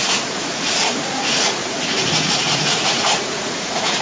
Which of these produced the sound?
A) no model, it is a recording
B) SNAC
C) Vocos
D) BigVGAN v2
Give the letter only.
C